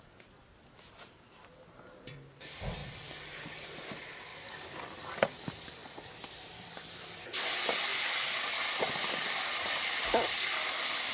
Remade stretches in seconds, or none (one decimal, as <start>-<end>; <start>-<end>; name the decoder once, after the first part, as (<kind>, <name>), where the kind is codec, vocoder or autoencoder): 0.0-2.8 (vocoder, BigVGAN v2); 3.7-11.1